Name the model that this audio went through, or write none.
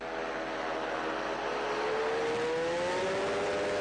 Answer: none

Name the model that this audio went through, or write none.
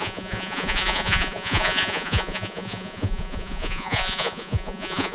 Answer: vocoder, Vocos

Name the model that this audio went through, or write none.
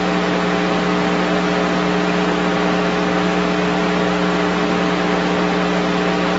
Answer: none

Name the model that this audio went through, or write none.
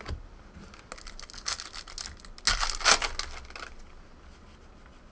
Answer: none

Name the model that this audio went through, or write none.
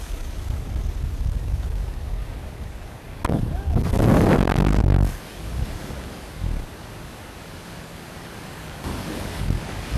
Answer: codec, DAC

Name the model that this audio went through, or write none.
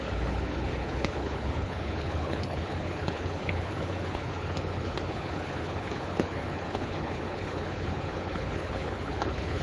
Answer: codec, HILCodec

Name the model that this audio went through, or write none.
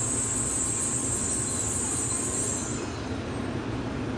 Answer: none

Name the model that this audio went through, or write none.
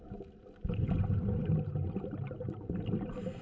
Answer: none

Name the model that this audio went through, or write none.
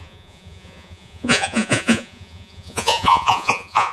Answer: vocoder, Vocos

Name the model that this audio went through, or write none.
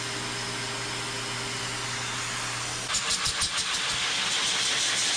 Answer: none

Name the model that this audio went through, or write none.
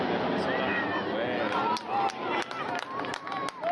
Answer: none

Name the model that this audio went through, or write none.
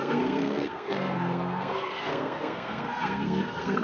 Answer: codec, SNAC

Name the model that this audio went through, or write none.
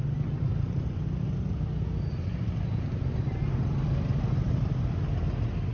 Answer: none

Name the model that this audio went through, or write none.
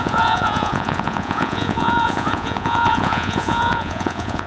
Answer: vocoder, Vocos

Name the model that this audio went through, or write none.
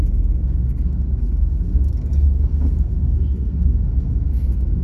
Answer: codec, SNAC